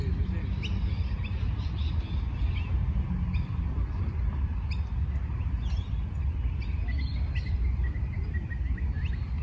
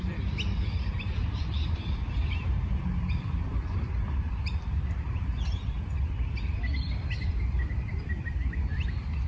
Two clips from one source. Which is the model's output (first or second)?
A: second